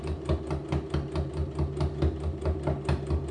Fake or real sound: real